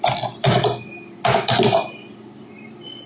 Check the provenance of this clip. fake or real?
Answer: real